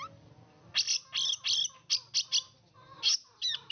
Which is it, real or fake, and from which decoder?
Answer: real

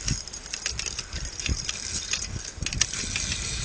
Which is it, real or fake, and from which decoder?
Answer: real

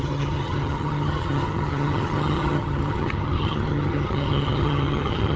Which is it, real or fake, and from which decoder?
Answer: fake, vocoder, HiFi-GAN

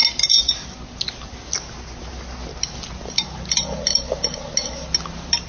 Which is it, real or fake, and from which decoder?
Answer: real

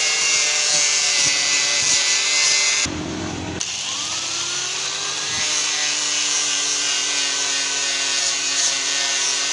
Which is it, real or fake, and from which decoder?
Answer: fake, vocoder, BigVGAN v2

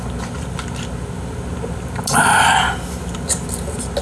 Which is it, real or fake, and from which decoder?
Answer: real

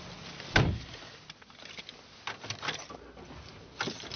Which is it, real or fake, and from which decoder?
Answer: real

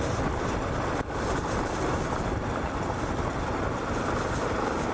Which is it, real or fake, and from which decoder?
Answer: real